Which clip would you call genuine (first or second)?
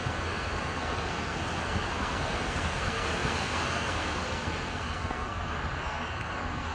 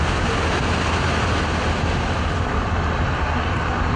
second